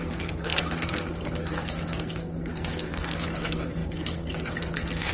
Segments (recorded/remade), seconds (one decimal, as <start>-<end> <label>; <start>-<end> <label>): 0.0-5.1 remade